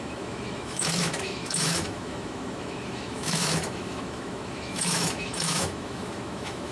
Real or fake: fake